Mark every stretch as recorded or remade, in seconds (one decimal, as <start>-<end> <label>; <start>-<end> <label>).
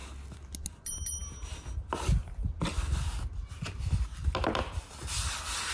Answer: 0.0-5.7 recorded